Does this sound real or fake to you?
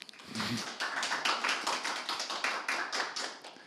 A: real